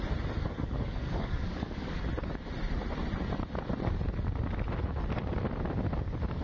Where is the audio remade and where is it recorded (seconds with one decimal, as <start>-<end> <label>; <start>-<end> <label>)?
0.0-0.4 recorded; 0.4-2.0 remade; 2.0-6.4 recorded